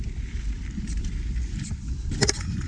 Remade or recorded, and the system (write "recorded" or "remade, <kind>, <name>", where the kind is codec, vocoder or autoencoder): recorded